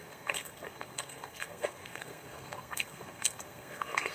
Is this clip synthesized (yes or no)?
yes